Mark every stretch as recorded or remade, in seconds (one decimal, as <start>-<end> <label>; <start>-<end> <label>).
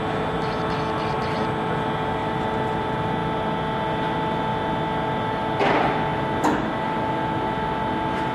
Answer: 0.0-2.2 recorded; 2.2-2.8 remade; 2.8-6.1 recorded; 6.1-7.1 remade; 7.1-8.3 recorded